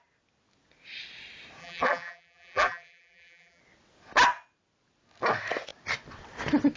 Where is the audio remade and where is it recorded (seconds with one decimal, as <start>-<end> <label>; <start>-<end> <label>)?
0.0-1.6 recorded; 1.6-3.6 remade; 3.6-6.8 recorded

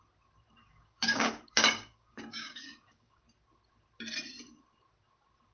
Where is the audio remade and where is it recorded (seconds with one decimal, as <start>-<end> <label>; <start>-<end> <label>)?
0.0-0.6 recorded; 0.6-3.2 remade; 3.2-5.5 recorded

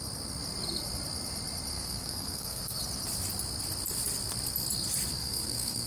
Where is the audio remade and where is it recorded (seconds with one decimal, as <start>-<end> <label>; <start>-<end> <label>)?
0.0-1.7 recorded; 1.7-2.8 remade; 2.8-5.2 recorded; 5.2-5.9 remade

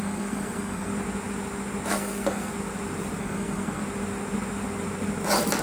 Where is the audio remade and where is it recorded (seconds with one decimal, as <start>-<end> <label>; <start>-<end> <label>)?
0.0-0.9 remade; 0.9-1.9 recorded; 1.9-2.5 remade; 2.5-3.2 recorded; 3.2-3.8 remade; 3.8-5.6 recorded

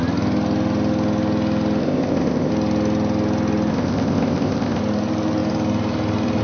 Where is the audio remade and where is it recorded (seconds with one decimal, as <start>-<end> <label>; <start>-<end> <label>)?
0.0-1.8 recorded; 1.8-2.5 remade; 2.5-3.7 recorded; 3.7-4.8 remade; 4.8-6.4 recorded

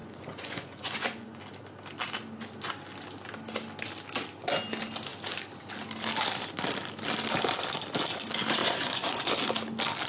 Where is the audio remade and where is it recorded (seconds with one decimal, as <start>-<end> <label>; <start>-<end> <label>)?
0.0-1.4 remade; 1.4-8.6 recorded; 8.6-9.3 remade; 9.3-10.1 recorded

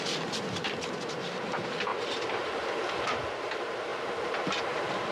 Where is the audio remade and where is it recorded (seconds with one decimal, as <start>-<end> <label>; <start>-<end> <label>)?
0.0-1.9 recorded; 1.9-2.7 remade; 2.7-5.1 recorded